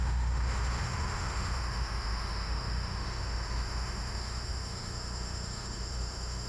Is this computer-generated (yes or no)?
yes